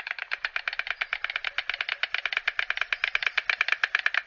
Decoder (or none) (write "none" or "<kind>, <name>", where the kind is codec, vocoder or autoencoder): none